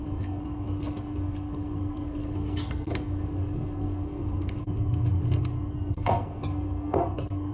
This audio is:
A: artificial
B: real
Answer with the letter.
A